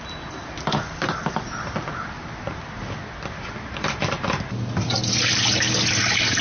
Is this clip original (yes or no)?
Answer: yes